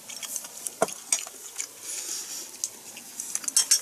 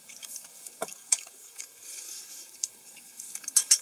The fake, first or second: second